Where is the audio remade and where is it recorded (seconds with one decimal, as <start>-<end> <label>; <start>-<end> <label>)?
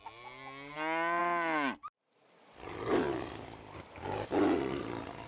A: 0.0-5.3 recorded